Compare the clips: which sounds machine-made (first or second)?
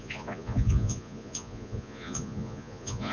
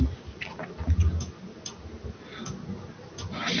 first